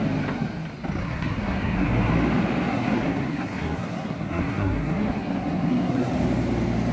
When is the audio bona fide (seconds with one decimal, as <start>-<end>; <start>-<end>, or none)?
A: 0.0-1.0; 2.1-2.7; 6.1-6.9